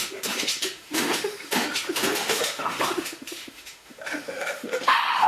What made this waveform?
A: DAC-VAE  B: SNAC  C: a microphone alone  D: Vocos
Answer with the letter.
A